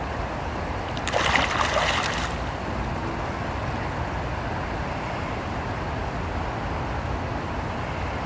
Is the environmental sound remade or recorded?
recorded